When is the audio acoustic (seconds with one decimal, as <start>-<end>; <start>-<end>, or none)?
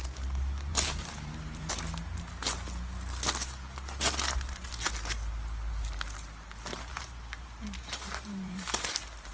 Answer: 0.0-0.7; 1.7-6.9; 8.8-9.3